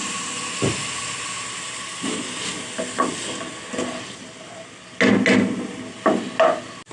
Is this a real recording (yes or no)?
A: yes